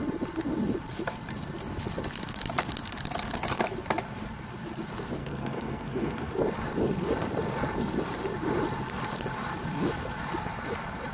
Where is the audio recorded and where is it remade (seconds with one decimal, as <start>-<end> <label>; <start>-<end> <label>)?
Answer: 0.0-5.2 recorded; 5.2-6.3 remade; 6.3-11.1 recorded